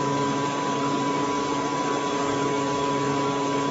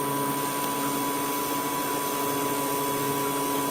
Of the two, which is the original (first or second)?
second